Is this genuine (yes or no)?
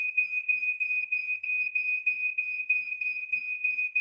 no